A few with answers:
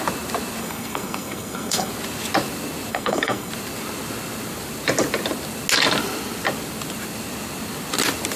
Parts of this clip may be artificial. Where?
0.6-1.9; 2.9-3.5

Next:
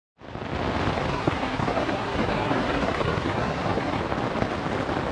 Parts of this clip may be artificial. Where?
1.1-4.0

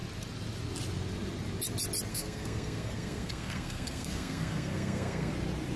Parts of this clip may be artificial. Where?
2.1-5.3

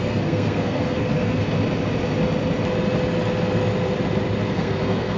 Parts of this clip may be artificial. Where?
0.0-1.4; 4.5-5.2

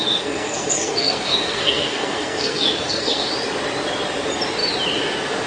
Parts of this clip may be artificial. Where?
0.0-3.3

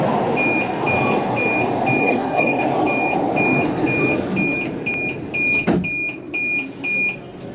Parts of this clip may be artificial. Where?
2.0-2.6